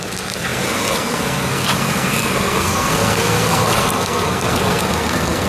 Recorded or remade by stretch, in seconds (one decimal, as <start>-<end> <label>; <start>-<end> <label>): 0.0-5.5 remade